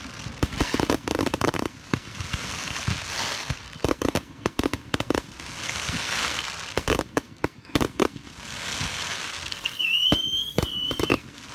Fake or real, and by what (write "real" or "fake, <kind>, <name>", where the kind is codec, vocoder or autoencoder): fake, codec, SNAC